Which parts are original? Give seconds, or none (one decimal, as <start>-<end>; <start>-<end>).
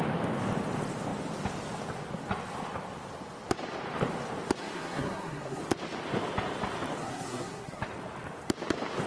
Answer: 0.0-4.6; 5.6-7.0; 7.8-9.1